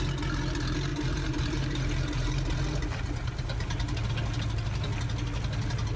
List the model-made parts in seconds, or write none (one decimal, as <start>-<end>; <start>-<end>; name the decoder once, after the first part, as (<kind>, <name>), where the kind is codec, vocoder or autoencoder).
0.9-4.1 (vocoder, BigVGAN v2)